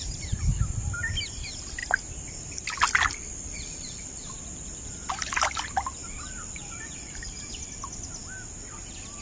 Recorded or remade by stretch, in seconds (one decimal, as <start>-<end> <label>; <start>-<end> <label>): 0.0-9.2 recorded